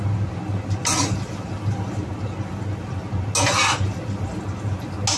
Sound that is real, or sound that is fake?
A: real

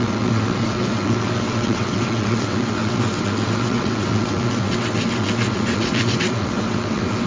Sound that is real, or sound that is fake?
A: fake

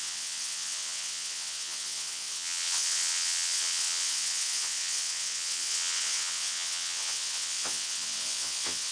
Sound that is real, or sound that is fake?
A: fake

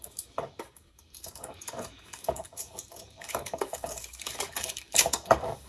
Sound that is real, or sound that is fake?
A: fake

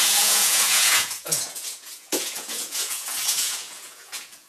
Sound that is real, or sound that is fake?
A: fake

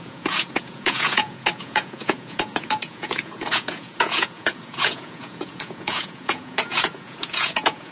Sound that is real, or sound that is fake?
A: fake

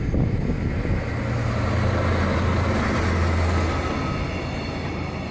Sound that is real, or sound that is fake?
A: real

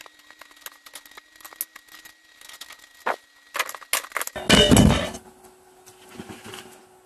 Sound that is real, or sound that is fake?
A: real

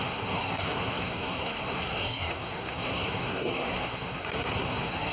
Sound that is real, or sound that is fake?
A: fake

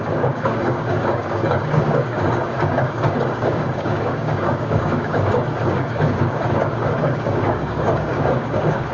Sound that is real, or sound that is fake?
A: fake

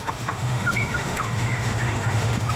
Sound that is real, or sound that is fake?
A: fake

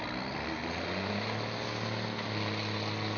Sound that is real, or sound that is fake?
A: real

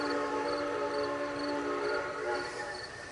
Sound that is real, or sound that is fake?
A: fake